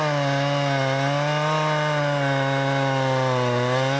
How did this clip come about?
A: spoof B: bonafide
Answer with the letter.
B